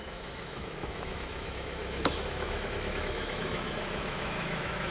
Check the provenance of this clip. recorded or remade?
remade